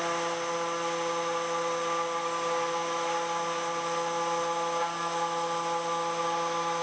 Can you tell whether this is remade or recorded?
recorded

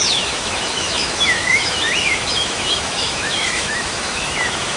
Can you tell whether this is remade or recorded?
remade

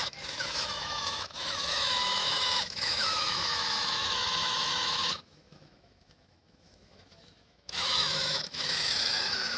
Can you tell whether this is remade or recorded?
remade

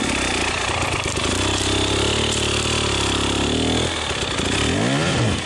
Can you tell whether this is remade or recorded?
recorded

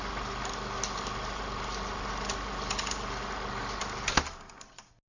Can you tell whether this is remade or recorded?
recorded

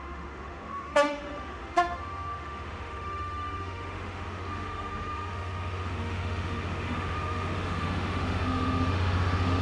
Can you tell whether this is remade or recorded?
remade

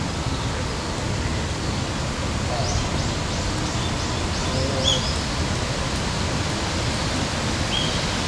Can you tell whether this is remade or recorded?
recorded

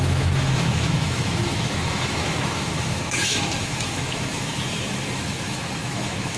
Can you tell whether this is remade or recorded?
remade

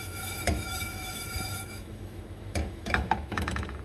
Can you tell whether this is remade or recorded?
remade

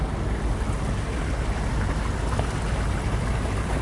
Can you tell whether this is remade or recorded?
recorded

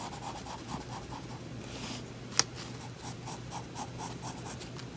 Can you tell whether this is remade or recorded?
recorded